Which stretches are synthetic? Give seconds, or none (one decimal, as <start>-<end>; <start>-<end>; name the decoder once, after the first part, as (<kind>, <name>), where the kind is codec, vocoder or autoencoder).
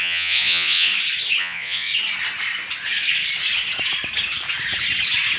0.0-0.9 (vocoder, Vocos); 1.4-1.9